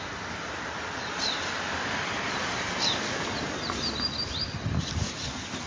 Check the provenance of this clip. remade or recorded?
remade